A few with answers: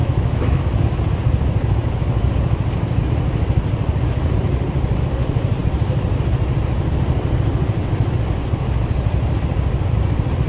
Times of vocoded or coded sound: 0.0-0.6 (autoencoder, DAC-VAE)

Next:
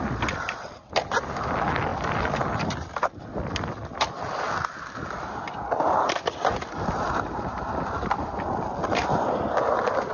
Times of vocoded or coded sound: none

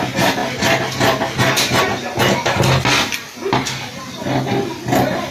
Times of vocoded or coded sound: none

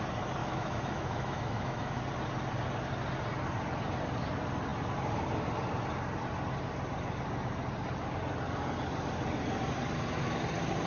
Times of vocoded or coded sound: 0.4-2.0 (autoencoder, DAC-VAE)

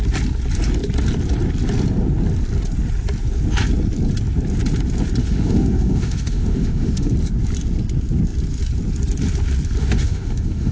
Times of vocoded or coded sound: 5.2-7.1 (autoencoder, DAC-VAE); 9.8-10.7

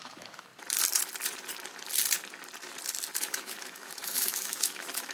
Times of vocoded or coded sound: 0.0-0.5 (autoencoder, DAC-VAE); 3.2-5.1